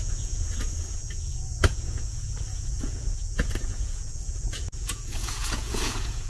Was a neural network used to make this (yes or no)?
yes